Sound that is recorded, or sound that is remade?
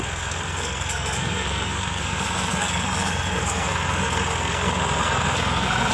remade